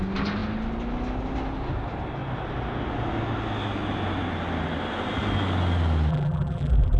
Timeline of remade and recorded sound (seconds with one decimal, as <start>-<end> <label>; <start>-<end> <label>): 0.0-6.1 recorded; 6.1-7.0 remade